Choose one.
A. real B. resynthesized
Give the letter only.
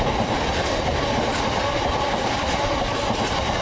A